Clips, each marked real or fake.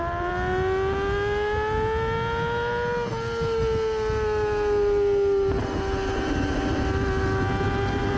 real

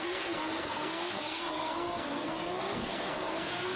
fake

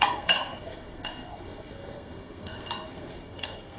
fake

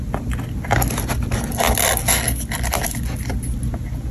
real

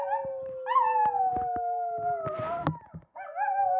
real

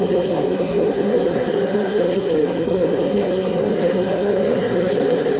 fake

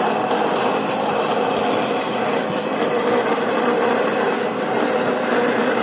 real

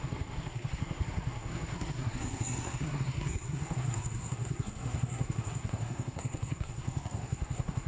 fake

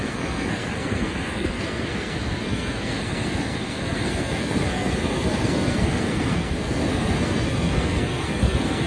fake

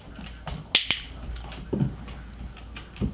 real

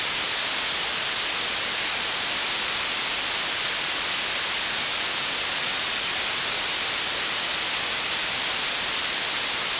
real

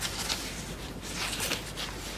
real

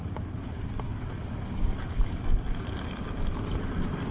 real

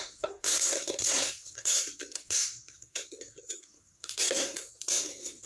fake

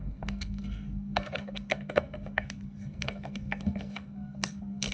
fake